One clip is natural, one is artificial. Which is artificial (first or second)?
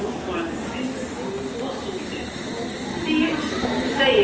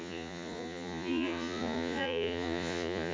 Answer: second